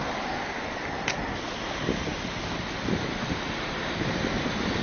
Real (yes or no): yes